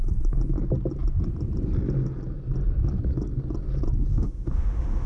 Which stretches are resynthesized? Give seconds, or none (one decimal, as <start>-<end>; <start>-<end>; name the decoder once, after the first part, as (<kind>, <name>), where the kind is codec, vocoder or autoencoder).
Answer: 4.1-5.1 (autoencoder, DAC-VAE)